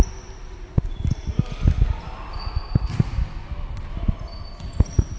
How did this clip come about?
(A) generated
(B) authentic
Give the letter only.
B